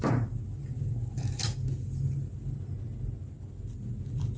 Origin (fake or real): real